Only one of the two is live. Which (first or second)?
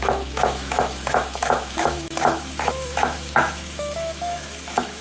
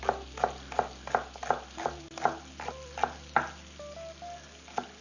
second